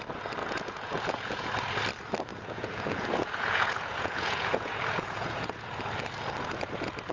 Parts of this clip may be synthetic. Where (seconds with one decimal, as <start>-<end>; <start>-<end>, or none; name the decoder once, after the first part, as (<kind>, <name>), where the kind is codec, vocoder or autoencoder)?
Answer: 0.4-1.5 (vocoder, Vocos); 2.3-5.8